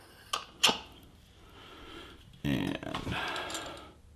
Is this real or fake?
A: real